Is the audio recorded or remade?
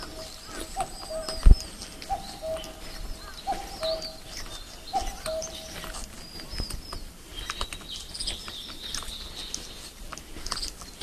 recorded